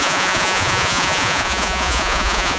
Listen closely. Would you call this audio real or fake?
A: fake